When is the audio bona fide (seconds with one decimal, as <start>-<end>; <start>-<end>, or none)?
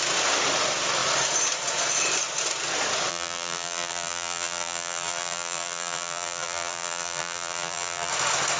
0.0-3.1; 8.1-8.6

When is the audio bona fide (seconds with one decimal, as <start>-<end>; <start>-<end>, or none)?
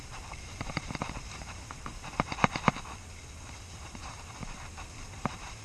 1.9-3.9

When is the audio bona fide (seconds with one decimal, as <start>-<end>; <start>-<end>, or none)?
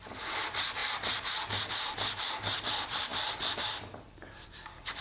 0.8-2.2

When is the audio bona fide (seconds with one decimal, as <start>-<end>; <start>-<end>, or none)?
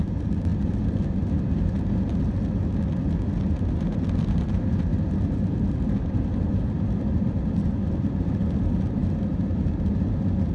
0.5-3.7; 9.0-9.5